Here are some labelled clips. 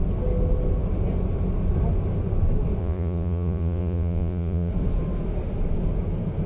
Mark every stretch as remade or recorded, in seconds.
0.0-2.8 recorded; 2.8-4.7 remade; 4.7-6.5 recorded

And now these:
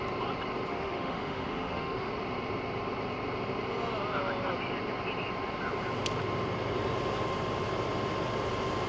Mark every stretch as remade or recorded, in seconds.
0.0-0.7 recorded; 0.7-2.1 remade; 2.1-8.9 recorded

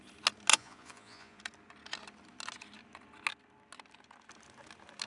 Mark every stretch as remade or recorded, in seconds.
0.0-0.5 recorded; 0.5-1.4 remade; 1.4-5.1 recorded

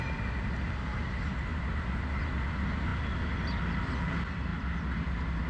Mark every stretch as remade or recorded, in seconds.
0.0-1.5 recorded; 1.5-2.1 remade; 2.1-5.5 recorded

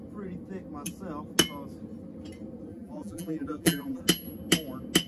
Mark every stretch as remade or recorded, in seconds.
0.0-2.7 recorded; 2.7-4.0 remade; 4.0-5.1 recorded

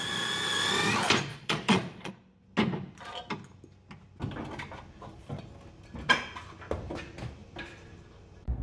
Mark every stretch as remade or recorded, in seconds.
0.0-1.3 recorded; 1.3-2.1 remade; 2.1-8.6 recorded

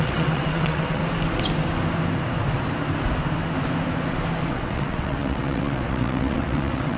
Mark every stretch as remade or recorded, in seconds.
0.0-1.0 remade; 1.0-4.5 recorded; 4.5-7.0 remade